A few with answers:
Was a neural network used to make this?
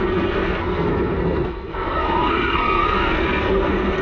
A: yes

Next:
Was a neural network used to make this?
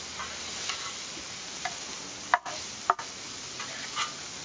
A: no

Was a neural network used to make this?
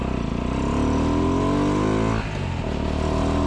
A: no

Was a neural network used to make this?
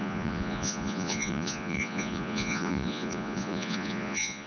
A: yes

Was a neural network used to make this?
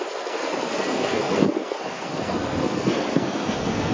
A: yes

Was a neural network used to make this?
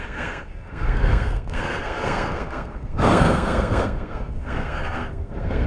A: yes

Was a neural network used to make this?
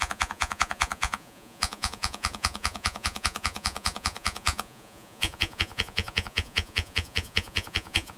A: yes